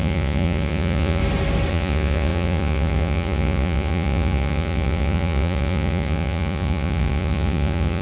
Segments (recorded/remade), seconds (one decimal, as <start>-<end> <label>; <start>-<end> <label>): 0.0-1.2 remade; 1.2-1.7 recorded; 1.7-8.0 remade